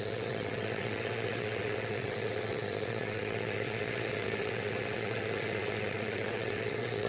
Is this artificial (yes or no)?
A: yes